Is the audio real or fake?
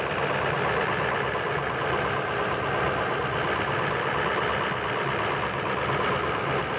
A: real